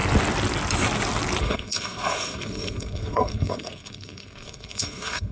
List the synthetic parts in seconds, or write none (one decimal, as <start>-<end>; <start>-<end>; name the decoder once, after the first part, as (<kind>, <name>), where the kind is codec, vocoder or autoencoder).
1.4-5.3 (codec, SNAC)